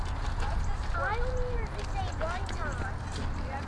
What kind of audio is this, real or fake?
real